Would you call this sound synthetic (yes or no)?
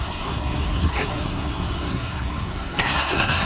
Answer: yes